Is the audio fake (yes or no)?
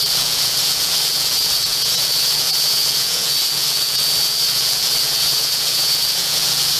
yes